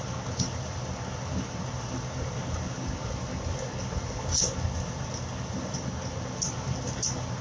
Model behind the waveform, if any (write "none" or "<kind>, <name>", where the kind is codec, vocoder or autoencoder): none